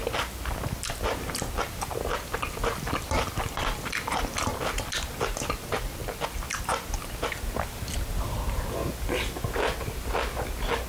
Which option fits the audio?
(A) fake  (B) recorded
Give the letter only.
B